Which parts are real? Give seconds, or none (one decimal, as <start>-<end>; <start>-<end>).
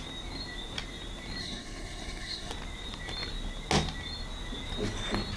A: 0.0-1.4; 2.5-5.4